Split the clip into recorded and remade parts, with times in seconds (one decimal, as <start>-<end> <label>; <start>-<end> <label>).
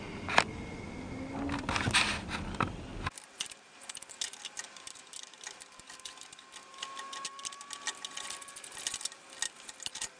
0.0-10.2 recorded